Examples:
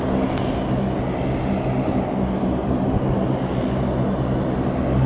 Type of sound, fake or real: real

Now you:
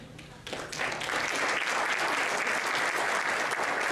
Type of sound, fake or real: real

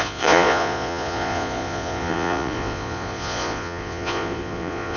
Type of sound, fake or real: fake